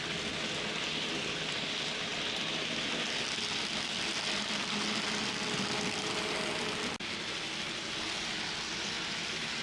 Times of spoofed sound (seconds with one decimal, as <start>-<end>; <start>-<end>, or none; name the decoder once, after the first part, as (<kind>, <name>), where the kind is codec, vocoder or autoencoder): none